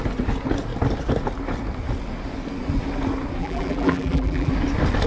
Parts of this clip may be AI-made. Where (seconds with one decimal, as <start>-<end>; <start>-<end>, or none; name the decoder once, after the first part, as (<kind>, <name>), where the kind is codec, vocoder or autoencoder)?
3.4-4.5 (vocoder, BigVGAN v2)